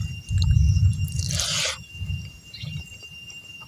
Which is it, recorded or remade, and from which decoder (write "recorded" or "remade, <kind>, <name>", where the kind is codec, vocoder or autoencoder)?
recorded